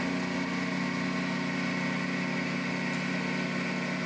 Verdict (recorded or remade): recorded